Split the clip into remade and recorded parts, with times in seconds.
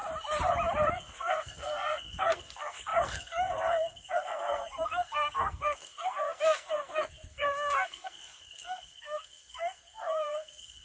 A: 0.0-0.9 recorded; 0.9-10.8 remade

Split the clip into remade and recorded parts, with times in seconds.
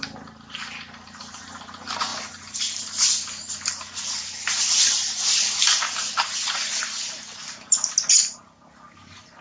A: 0.0-9.4 recorded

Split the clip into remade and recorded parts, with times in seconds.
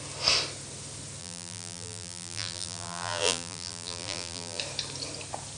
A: 0.0-1.2 recorded; 1.2-4.6 remade; 4.6-5.6 recorded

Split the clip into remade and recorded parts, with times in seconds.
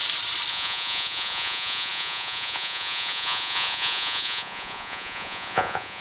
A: 0.0-0.5 recorded; 0.5-6.0 remade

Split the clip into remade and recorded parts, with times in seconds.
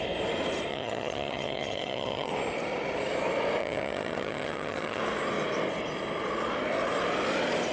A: 0.0-0.7 recorded; 0.7-2.3 remade; 2.3-3.6 recorded; 3.6-5.0 remade; 5.0-7.7 recorded